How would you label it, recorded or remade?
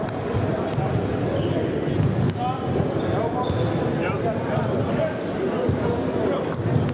recorded